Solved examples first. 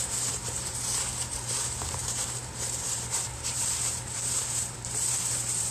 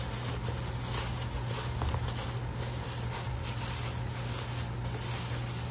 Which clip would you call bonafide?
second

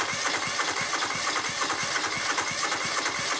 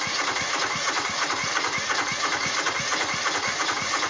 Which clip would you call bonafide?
first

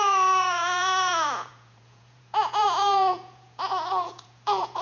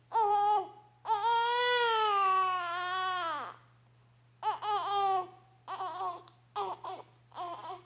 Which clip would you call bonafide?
second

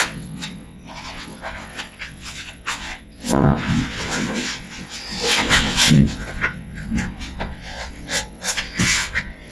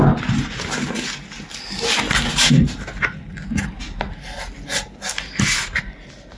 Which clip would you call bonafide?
second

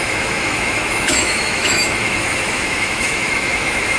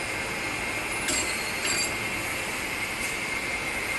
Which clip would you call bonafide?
second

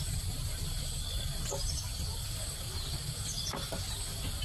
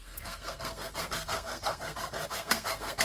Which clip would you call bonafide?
first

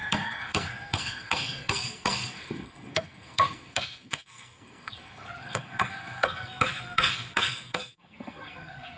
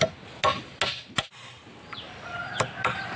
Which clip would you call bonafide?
second